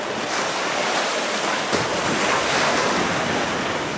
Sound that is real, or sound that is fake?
real